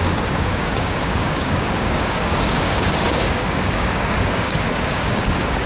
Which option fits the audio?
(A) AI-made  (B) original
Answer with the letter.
A